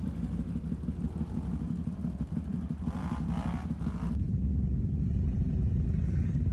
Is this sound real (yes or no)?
yes